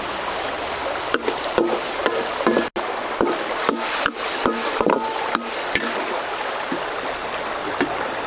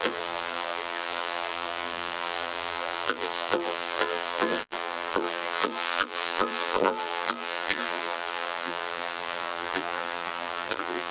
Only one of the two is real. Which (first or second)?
first